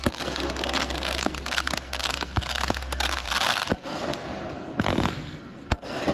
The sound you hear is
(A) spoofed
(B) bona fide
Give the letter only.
A